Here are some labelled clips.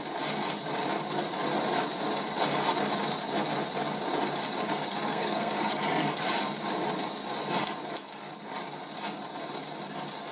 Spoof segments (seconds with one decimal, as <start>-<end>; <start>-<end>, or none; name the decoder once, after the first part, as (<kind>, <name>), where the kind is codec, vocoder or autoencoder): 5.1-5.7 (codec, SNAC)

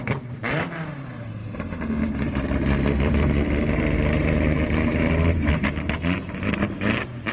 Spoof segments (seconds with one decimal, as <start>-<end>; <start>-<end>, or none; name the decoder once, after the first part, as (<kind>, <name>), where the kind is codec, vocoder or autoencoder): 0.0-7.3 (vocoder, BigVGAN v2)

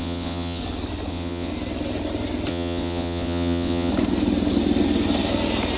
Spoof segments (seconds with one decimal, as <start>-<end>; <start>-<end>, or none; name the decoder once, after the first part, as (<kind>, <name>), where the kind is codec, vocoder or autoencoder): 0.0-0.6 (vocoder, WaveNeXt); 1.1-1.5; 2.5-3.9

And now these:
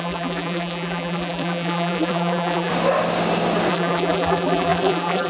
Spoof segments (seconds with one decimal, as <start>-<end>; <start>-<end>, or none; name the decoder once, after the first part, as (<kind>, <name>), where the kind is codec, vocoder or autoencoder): 0.0-2.7 (vocoder, BigVGAN v2); 3.7-5.3